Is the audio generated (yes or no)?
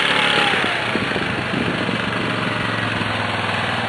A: no